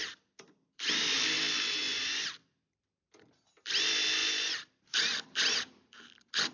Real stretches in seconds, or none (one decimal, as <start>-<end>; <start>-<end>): none